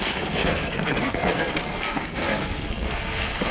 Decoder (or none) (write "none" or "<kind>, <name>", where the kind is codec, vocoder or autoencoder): codec, SNAC